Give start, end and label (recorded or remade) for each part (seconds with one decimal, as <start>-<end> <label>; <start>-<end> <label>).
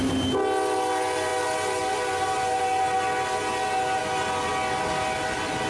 0.0-5.7 recorded